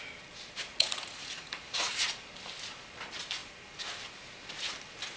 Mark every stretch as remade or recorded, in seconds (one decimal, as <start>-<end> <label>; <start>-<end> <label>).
0.0-0.7 recorded; 0.7-1.9 remade; 1.9-5.2 recorded